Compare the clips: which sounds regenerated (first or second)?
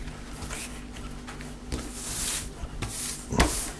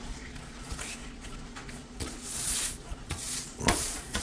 second